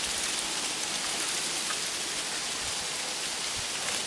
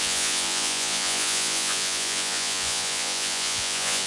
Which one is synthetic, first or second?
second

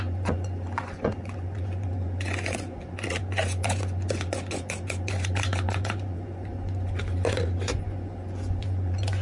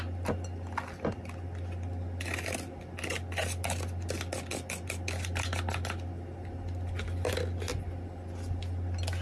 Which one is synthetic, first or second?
first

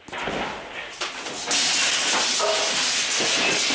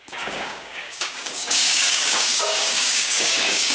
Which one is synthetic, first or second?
second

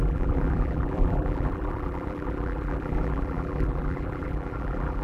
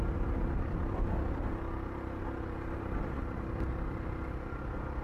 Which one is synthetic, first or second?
first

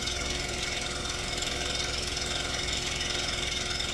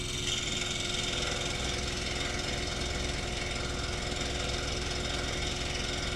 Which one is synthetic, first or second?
first